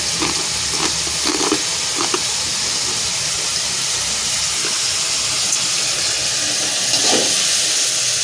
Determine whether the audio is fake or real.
real